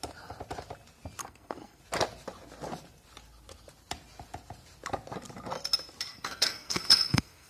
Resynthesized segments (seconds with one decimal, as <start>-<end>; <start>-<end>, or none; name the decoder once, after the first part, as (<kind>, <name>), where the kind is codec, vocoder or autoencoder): 1.2-1.8 (codec, SNAC); 6.1-7.5